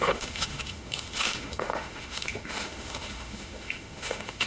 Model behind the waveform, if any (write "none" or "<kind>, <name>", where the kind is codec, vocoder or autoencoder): autoencoder, DAC-VAE